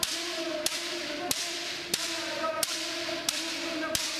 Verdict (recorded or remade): recorded